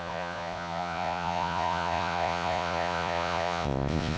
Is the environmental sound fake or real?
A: fake